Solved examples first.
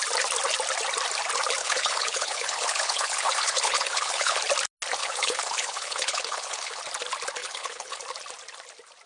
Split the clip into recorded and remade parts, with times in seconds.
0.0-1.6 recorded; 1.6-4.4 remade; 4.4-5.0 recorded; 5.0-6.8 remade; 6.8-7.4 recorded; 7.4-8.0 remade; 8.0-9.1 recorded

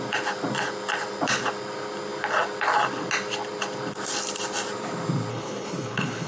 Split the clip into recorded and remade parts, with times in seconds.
0.0-5.3 recorded; 5.3-6.3 remade